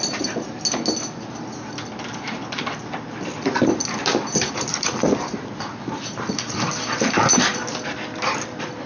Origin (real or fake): real